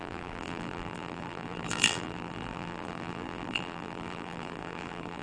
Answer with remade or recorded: remade